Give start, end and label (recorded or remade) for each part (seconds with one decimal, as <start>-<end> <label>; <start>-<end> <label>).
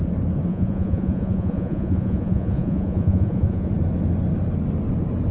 0.0-0.5 recorded; 0.5-3.7 remade; 3.7-5.3 recorded